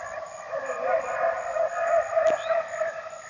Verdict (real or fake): real